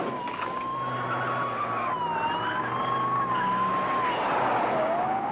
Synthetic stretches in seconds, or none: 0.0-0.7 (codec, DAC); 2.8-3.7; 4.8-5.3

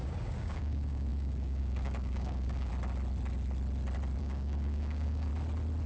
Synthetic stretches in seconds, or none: 0.0-2.7 (codec, DAC); 4.2-5.3

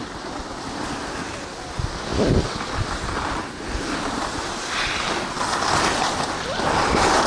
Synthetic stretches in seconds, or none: none

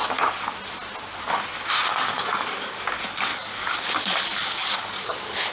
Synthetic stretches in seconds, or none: 1.9-2.8 (codec, DAC); 3.3-5.5

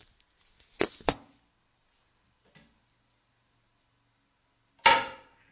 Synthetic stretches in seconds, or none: none

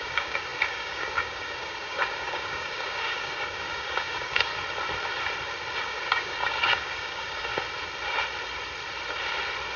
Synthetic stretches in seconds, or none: 0.0-4.5 (codec, DAC); 5.8-7.5

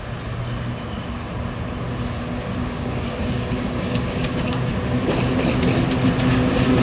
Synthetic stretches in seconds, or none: 2.6-4.7 (codec, DAC)